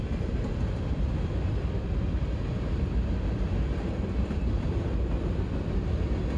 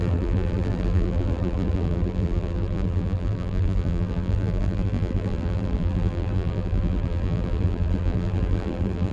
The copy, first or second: second